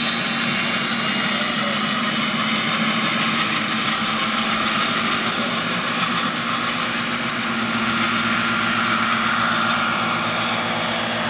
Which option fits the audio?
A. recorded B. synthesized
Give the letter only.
A